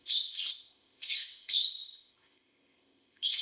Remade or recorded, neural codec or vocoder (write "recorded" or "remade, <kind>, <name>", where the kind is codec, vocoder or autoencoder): remade, codec, ZipCodec